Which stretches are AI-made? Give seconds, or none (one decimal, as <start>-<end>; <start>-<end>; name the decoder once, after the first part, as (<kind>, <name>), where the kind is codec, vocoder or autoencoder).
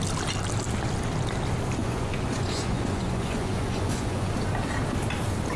1.8-4.3 (vocoder, Vocos)